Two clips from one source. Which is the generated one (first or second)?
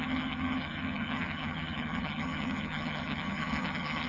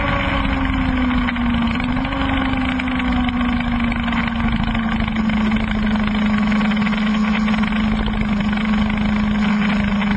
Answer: first